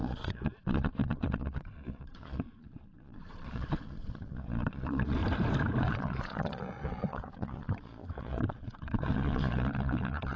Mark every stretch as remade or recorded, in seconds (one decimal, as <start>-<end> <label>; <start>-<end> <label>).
0.0-5.2 remade; 5.2-5.8 recorded; 5.8-10.4 remade